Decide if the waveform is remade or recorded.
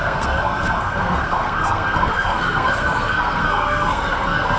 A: remade